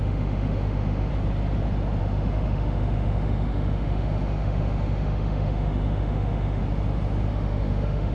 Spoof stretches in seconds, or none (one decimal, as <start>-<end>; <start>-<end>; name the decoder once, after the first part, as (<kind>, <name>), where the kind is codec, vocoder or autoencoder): 0.0-1.1 (autoencoder, DAC-VAE); 2.0-6.6; 7.3-8.1